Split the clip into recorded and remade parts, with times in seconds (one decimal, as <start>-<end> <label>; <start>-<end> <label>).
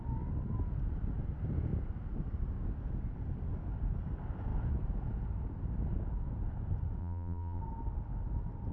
0.0-7.0 recorded; 7.0-7.6 remade; 7.6-8.7 recorded